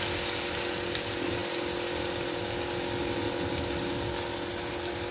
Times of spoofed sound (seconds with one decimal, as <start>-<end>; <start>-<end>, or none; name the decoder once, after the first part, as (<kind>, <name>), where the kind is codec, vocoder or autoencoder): none